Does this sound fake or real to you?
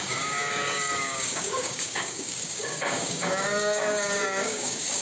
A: fake